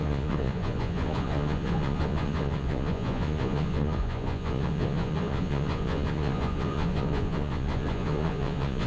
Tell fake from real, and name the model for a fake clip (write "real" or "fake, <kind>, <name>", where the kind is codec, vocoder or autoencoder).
fake, vocoder, Vocos